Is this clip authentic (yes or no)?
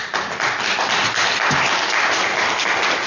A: yes